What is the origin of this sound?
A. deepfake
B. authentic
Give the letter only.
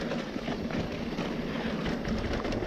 B